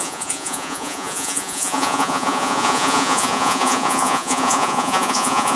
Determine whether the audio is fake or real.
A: fake